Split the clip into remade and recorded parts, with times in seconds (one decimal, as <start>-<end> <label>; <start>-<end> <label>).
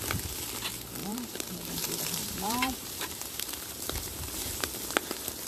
0.0-1.0 recorded; 1.0-4.3 remade; 4.3-5.5 recorded